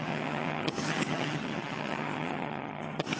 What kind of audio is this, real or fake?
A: fake